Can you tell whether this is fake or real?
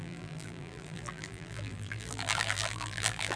fake